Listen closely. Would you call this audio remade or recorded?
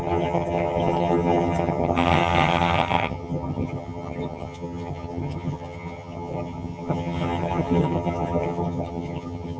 remade